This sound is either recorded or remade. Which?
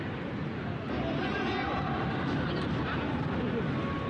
recorded